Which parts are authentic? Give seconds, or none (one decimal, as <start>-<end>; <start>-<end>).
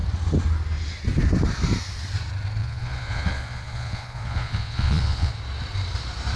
0.0-2.6; 5.3-6.4